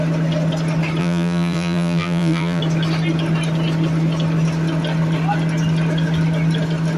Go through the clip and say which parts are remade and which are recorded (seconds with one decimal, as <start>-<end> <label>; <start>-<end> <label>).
0.0-1.0 recorded; 1.0-2.6 remade; 2.6-7.0 recorded